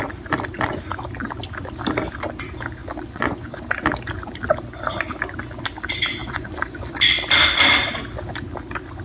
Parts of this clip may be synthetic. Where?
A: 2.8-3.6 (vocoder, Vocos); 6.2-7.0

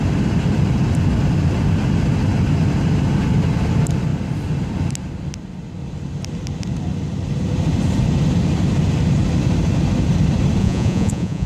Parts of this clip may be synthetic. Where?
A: 10.6-11.5 (vocoder, Vocos)

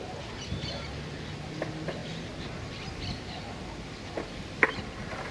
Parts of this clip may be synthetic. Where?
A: none

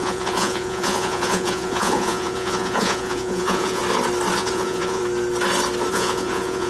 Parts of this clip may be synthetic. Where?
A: 0.0-3.8 (vocoder, Vocos); 4.4-5.0; 5.9-6.7

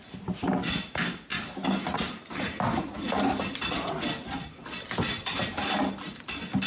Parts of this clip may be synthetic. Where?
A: none